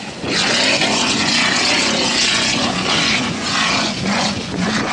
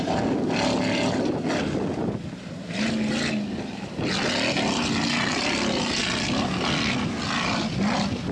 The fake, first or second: first